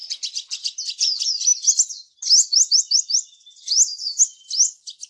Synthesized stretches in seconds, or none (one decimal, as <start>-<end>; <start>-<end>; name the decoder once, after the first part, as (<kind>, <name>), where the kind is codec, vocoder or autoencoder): none